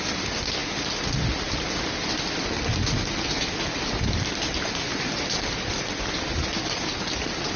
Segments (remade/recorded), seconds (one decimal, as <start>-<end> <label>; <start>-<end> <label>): 0.0-7.6 recorded

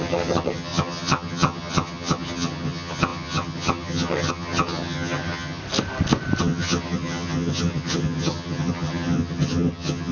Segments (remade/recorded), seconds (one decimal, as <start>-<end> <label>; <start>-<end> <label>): 0.0-5.6 remade; 5.6-6.4 recorded; 6.4-10.1 remade

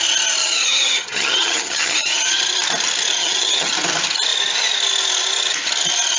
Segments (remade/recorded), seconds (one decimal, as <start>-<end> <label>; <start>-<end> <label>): 0.0-0.4 recorded; 0.4-2.4 remade; 2.4-3.2 recorded; 3.2-3.7 remade; 3.7-6.2 recorded

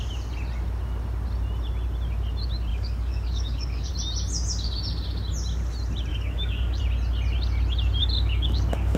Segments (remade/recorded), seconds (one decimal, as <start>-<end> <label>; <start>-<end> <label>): 0.0-2.7 recorded; 2.7-3.9 remade; 3.9-6.1 recorded; 6.1-6.8 remade; 6.8-8.0 recorded; 8.0-9.0 remade

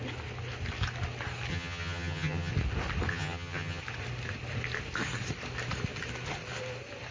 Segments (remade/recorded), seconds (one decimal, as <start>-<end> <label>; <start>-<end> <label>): 0.0-1.5 recorded; 1.5-2.5 remade; 2.5-3.1 recorded; 3.1-3.8 remade; 3.8-7.1 recorded

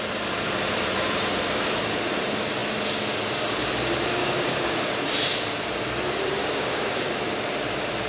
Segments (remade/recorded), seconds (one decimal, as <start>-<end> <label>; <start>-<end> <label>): 0.0-4.2 recorded; 4.2-4.9 remade; 4.9-6.4 recorded; 6.4-7.1 remade; 7.1-8.1 recorded

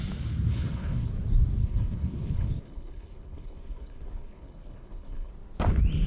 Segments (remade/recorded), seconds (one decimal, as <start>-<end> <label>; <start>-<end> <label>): 0.0-0.5 recorded; 0.5-1.1 remade; 1.1-1.6 recorded; 1.6-5.3 remade; 5.3-6.1 recorded

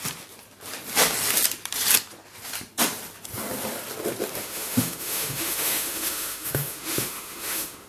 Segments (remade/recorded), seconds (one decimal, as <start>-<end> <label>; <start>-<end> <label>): 0.0-4.4 recorded; 4.4-7.9 remade